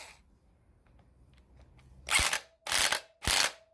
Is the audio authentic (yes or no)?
yes